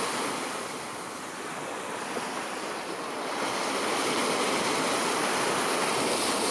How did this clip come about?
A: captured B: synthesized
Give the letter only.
A